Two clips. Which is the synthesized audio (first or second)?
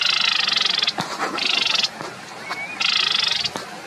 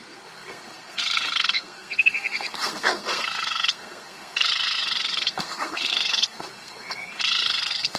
second